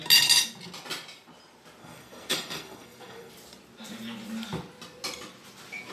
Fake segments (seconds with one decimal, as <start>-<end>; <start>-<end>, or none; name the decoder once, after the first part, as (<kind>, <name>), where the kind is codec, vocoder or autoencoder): 1.8-3.3 (codec, SNAC)